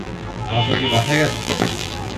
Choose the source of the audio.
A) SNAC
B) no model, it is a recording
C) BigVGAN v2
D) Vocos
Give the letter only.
C